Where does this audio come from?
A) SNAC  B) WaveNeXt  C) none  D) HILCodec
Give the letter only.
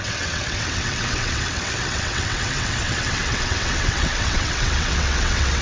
B